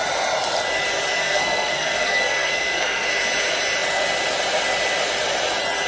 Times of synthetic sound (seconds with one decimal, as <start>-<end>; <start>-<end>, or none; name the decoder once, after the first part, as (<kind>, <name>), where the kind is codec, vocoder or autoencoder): 1.2-3.1 (codec, SNAC)